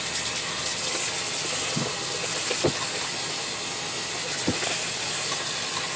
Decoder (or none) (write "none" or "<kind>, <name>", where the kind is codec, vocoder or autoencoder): none